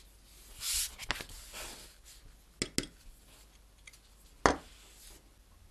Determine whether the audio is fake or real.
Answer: real